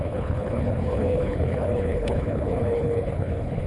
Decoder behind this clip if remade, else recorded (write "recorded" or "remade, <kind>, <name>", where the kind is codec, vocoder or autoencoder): remade, codec, HILCodec